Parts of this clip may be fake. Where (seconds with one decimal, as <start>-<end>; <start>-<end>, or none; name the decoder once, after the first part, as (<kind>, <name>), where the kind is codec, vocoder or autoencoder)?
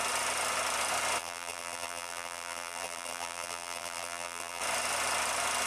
1.2-4.6 (vocoder, BigVGAN v2)